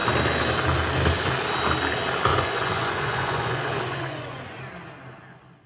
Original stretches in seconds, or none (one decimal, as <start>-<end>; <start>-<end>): 0.0-2.3; 4.6-5.7